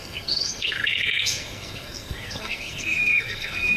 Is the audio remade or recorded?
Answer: remade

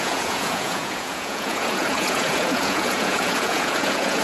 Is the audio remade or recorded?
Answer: remade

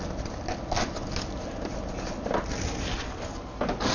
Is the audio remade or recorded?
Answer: recorded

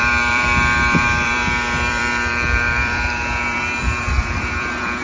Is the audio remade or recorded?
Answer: remade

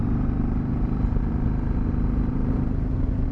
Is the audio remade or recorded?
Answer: remade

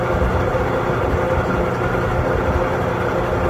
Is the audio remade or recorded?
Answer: recorded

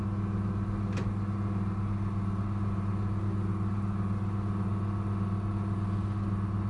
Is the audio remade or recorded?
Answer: recorded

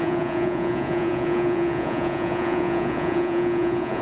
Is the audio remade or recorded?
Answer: remade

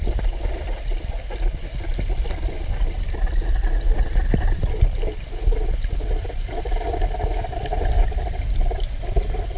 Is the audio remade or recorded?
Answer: recorded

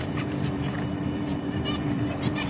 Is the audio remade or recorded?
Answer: remade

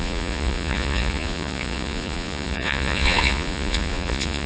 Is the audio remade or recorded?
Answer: remade